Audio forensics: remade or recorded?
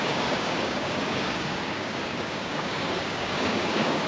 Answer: remade